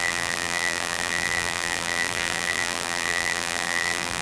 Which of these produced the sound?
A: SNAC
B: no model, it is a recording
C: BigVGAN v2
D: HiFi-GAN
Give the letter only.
C